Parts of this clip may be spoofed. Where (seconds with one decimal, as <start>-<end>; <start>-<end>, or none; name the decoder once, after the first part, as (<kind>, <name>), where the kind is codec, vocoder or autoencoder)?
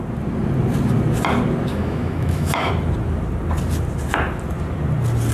1.7-2.7 (autoencoder, DAC-VAE)